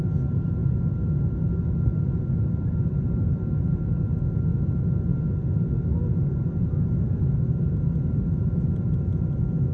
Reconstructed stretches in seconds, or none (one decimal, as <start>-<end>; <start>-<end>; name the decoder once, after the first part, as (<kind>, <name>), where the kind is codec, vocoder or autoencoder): none